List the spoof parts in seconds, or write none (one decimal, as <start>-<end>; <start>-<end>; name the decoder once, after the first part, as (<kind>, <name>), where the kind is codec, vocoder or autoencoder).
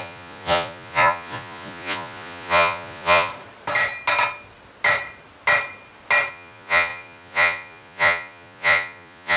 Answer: 0.0-3.3 (vocoder, Vocos); 6.3-9.4